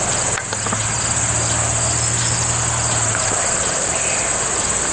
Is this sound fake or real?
real